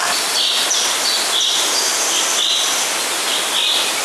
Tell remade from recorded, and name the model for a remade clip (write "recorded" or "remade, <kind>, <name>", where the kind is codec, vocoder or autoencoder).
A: recorded